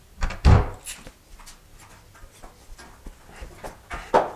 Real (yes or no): yes